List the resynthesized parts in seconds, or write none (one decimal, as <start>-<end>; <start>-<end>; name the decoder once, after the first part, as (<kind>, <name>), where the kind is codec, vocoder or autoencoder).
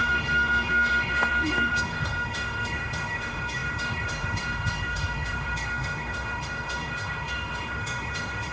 0.0-8.5 (autoencoder, DAC-VAE)